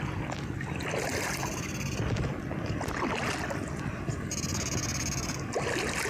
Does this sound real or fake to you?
real